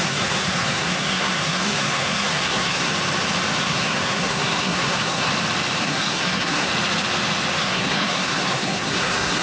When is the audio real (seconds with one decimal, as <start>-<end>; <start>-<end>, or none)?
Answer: 2.9-3.6; 5.3-5.8; 6.7-7.6